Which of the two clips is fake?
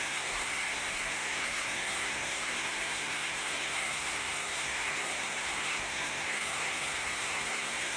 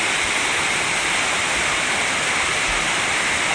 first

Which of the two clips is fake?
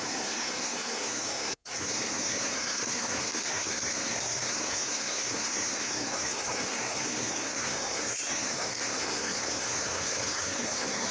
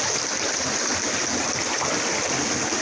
first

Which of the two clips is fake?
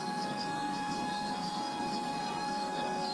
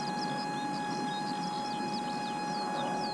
first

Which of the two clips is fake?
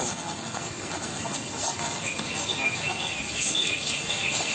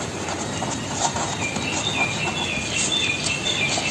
first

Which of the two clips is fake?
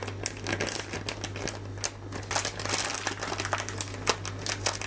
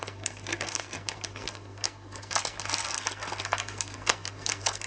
second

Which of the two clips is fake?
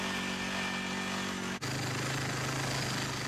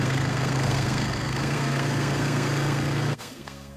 second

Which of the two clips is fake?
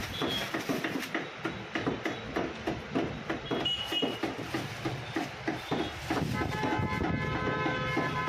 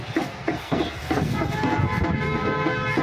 second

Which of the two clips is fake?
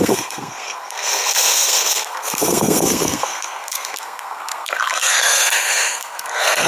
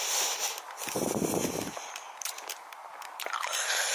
first